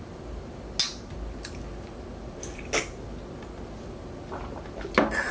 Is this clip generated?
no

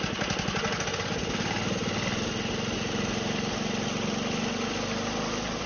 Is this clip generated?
no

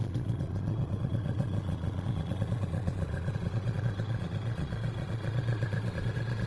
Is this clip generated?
yes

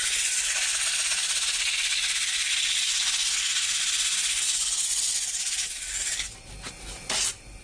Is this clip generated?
no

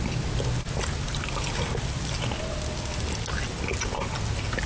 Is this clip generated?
no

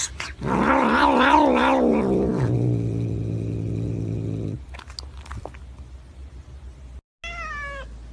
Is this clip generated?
no